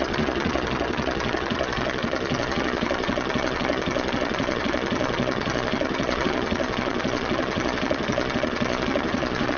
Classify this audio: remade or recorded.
remade